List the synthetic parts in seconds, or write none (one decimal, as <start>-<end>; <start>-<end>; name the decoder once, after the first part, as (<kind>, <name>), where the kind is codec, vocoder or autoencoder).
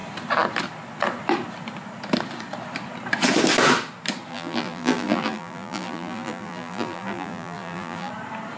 4.3-8.1 (vocoder, BigVGAN v2)